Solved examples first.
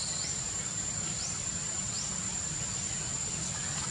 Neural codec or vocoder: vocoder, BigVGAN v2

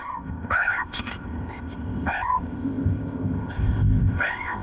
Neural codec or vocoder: codec, ZipCodec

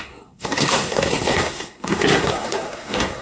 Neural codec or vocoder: codec, SNAC